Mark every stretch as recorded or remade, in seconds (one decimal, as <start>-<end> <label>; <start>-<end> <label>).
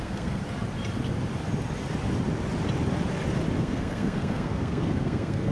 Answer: 0.0-0.4 remade; 0.4-3.6 recorded; 3.6-5.5 remade